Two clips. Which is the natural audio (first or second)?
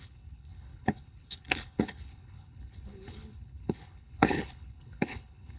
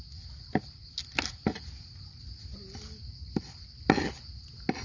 second